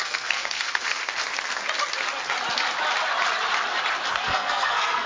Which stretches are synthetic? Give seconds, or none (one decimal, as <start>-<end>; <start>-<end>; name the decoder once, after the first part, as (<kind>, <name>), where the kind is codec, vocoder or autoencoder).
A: 0.0-1.0 (codec, SNAC); 4.1-5.1